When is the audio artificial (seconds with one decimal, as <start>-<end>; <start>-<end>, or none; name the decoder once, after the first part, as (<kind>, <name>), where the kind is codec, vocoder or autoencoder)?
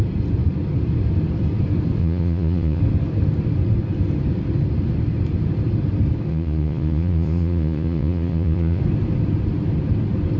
2.0-2.8 (vocoder, Vocos); 6.3-8.8